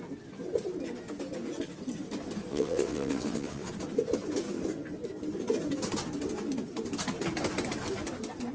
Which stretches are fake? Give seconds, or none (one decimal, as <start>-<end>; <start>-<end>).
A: 2.5-3.7